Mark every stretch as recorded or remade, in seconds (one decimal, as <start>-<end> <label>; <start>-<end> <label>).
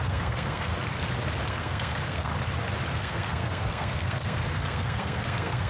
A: 0.0-0.7 remade; 0.7-1.5 recorded; 1.5-2.3 remade; 2.3-2.9 recorded; 2.9-5.7 remade